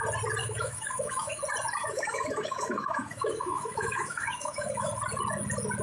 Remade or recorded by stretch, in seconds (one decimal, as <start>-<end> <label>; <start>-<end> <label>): 0.0-0.4 recorded; 0.4-1.4 remade; 1.4-1.8 recorded; 1.8-4.9 remade; 4.9-5.8 recorded